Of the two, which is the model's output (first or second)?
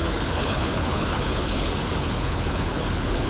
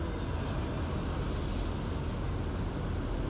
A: first